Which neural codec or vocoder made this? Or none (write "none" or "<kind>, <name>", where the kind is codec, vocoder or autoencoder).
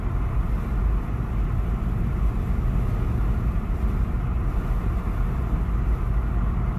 none